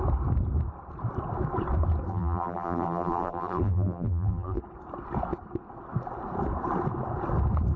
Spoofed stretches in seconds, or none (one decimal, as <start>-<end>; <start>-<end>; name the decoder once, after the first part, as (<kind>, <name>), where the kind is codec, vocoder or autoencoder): 2.1-4.6 (vocoder, BigVGAN v2)